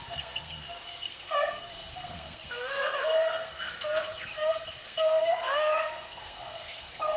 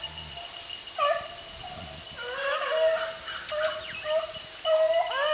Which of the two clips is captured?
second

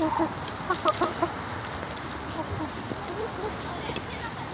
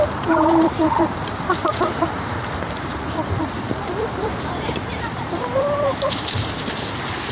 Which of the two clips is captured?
first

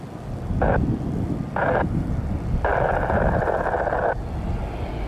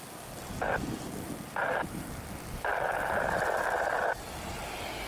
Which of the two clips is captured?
first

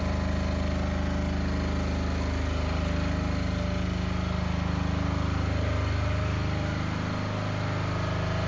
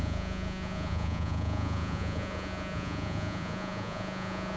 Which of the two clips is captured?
first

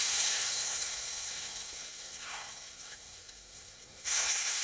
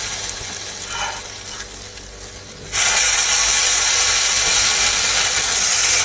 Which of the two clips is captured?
second